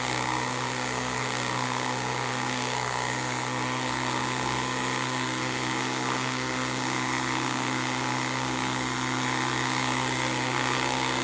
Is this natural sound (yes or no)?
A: no